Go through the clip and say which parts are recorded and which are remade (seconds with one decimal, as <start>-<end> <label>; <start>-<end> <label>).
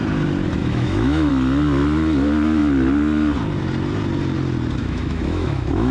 0.0-0.6 recorded; 0.6-1.3 remade; 1.3-4.8 recorded; 4.8-5.9 remade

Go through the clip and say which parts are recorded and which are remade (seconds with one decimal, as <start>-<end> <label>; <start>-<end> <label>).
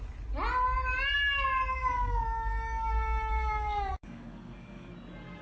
0.0-1.7 recorded; 1.7-4.9 remade; 4.9-5.4 recorded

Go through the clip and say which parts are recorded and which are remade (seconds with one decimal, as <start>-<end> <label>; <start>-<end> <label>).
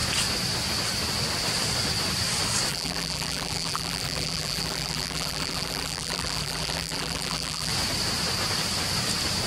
0.0-2.7 recorded; 2.7-7.7 remade; 7.7-9.5 recorded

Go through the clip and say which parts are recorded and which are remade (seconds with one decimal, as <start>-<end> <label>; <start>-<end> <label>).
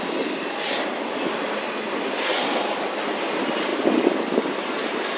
0.0-5.2 recorded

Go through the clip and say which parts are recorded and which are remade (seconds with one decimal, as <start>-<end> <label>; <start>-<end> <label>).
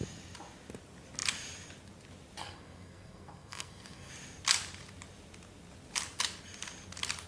0.0-2.4 recorded; 2.4-4.1 remade; 4.1-7.3 recorded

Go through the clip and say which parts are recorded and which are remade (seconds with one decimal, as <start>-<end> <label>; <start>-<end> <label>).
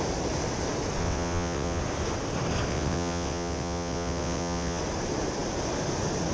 0.0-1.0 recorded; 1.0-1.8 remade; 1.8-2.7 recorded; 2.7-4.8 remade; 4.8-6.3 recorded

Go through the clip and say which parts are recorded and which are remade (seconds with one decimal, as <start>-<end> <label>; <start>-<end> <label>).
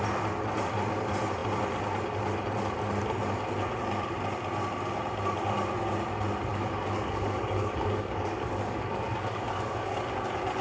0.0-6.5 recorded; 6.5-10.0 remade; 10.0-10.6 recorded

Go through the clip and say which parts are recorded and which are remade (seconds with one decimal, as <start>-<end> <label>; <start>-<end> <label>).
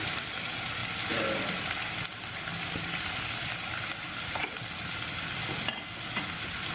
0.0-6.7 recorded